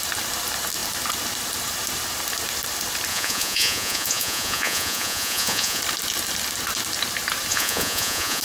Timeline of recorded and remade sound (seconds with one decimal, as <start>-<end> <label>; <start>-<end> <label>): 0.0-3.1 recorded; 3.1-5.8 remade; 5.8-7.5 recorded; 7.5-8.4 remade